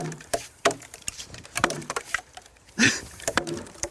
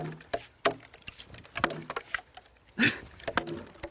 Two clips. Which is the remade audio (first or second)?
first